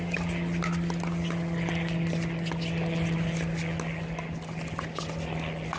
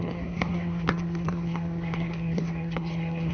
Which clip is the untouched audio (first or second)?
first